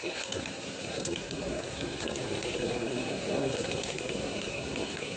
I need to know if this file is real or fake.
fake